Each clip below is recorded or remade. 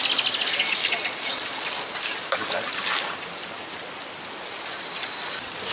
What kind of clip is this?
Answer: recorded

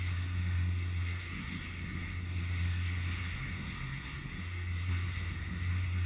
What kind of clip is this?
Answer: remade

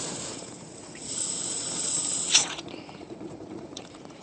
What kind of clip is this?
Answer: remade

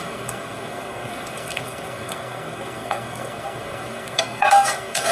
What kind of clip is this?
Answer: remade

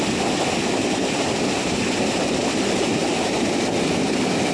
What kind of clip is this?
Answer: recorded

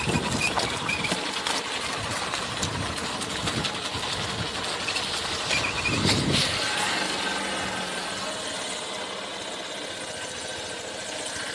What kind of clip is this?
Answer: recorded